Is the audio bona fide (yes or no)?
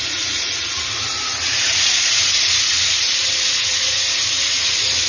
no